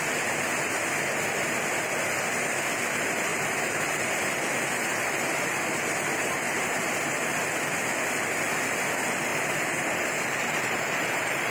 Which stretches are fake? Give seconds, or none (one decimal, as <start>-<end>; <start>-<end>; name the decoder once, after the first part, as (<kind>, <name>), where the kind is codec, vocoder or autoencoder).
3.3-6.9 (vocoder, BigVGAN v2); 9.3-11.5

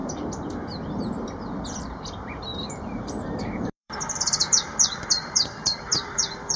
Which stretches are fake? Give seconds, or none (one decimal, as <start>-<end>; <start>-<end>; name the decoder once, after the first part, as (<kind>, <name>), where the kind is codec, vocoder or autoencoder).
2.5-6.6 (vocoder, BigVGAN v2)

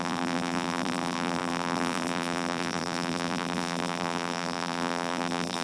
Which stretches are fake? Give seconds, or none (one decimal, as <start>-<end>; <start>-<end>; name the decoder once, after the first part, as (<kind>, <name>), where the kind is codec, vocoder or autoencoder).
0.0-5.6 (vocoder, BigVGAN v2)

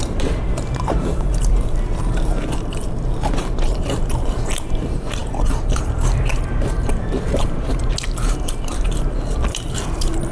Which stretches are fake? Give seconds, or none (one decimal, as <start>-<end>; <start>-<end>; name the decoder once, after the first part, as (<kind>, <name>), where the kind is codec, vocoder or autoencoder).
0.0-10.3 (vocoder, BigVGAN v2)

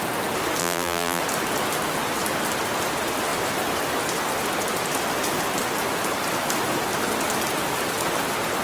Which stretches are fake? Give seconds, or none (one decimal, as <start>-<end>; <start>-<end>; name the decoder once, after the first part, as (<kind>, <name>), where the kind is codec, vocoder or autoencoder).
0.6-1.2 (vocoder, BigVGAN v2)

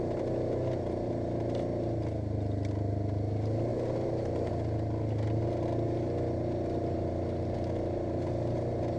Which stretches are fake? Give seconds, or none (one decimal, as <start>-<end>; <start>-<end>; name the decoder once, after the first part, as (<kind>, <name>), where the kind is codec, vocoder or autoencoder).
3.7-4.5 (vocoder, BigVGAN v2)

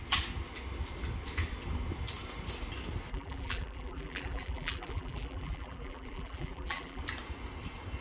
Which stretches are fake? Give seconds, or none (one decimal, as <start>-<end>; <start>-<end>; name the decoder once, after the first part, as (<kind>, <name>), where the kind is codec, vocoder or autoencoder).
3.1-7.0 (vocoder, BigVGAN v2)